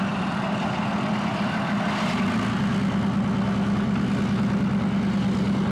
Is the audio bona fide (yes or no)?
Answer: yes